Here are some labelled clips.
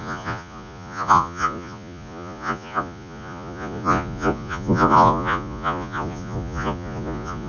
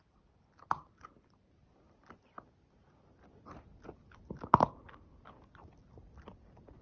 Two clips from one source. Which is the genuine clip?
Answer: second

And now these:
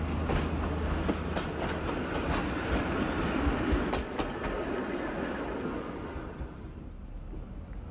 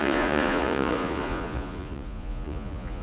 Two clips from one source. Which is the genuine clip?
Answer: first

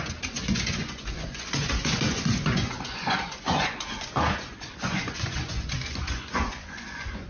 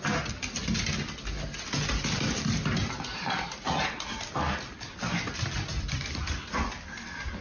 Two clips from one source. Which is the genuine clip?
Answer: second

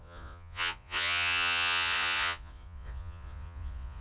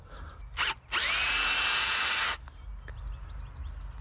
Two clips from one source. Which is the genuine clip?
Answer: second